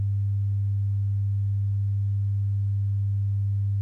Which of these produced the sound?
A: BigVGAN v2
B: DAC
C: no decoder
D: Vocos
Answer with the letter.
C